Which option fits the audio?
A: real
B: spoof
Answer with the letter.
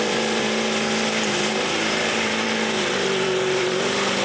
B